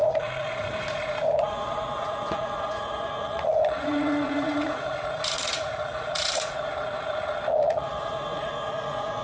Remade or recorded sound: remade